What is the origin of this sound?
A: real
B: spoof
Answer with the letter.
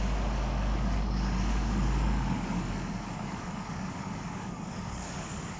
B